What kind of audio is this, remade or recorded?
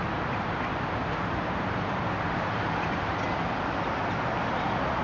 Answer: recorded